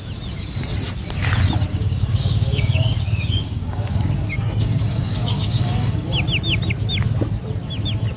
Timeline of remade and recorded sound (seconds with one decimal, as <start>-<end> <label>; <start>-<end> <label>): 0.0-1.7 recorded; 1.7-6.1 remade; 6.1-8.2 recorded

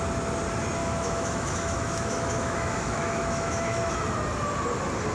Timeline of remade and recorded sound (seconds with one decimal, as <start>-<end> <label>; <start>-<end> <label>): 0.0-0.8 recorded; 0.8-3.9 remade; 3.9-5.1 recorded

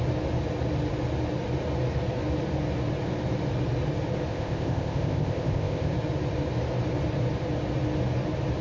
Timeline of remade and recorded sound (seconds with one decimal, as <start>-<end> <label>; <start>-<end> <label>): 0.0-4.3 recorded; 4.3-5.9 remade; 5.9-8.6 recorded

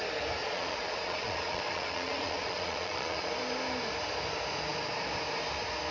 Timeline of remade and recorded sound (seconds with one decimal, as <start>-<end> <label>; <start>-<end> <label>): 0.0-0.4 recorded; 0.4-3.3 remade; 3.3-5.9 recorded

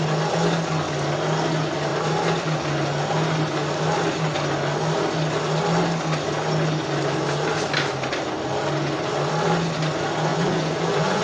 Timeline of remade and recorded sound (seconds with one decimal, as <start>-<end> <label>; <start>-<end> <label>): 0.0-10.3 recorded; 10.3-11.2 remade

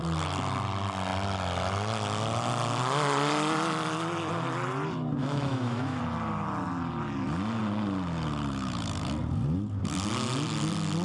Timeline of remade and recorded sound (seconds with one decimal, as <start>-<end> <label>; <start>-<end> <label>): 0.0-5.2 recorded; 5.2-6.0 remade; 6.0-11.0 recorded

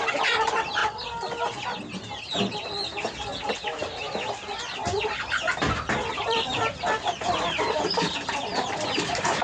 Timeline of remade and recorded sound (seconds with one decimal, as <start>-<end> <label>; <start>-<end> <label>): 0.0-0.8 remade; 0.8-6.1 recorded; 6.1-9.4 remade

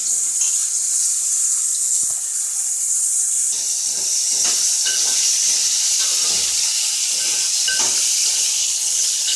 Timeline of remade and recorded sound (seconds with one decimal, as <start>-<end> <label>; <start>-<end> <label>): 0.0-1.5 recorded; 1.5-2.2 remade; 2.2-8.6 recorded; 8.6-9.4 remade